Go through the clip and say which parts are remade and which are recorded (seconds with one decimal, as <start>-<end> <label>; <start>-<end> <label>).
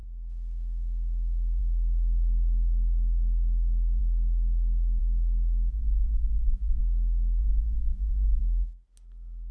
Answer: 0.0-5.7 recorded; 5.7-6.8 remade; 6.8-7.4 recorded; 7.4-8.4 remade; 8.4-9.5 recorded